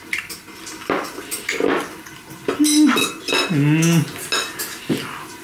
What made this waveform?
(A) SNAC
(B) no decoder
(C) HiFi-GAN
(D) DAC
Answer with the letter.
B